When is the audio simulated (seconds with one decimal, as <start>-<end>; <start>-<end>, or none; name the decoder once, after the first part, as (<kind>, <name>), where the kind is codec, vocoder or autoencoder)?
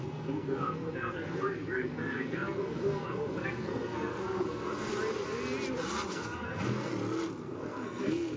0.0-4.9 (codec, SNAC); 6.1-6.9; 7.4-8.4